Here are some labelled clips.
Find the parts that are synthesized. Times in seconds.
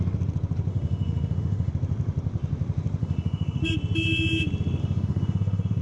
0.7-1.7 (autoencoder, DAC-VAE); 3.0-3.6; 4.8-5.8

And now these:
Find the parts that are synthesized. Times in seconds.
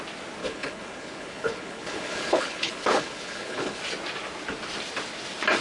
0.4-3.8 (codec, HILCodec)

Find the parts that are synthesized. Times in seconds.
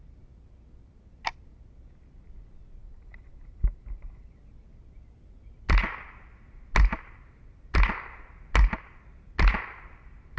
2.8-4.4 (vocoder, BigVGAN v2)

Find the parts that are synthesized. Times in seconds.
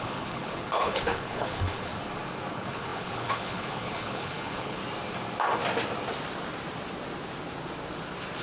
0.0-1.9 (codec, HILCodec); 2.5-4.8